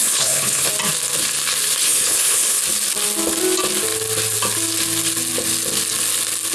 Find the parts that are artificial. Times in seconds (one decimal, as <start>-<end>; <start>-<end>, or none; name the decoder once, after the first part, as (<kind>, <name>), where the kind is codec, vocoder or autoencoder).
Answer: 0.0-0.7 (codec, HILCodec); 1.8-2.6